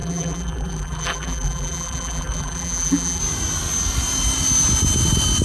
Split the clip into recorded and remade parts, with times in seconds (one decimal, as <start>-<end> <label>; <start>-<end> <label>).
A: 0.0-3.2 remade; 3.2-5.4 recorded